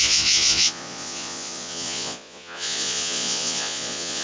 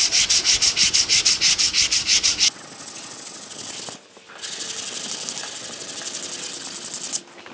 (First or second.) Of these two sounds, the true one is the second